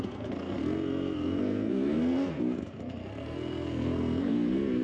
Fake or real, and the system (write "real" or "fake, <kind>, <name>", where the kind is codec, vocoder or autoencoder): fake, codec, SNAC